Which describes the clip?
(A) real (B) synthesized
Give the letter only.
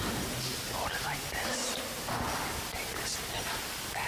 A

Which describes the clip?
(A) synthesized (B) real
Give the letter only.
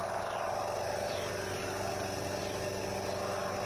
B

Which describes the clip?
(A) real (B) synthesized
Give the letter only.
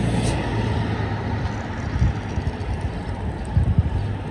A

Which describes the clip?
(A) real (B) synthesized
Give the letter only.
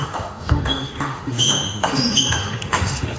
B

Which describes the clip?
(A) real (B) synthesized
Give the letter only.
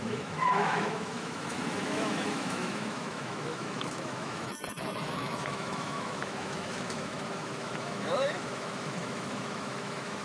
B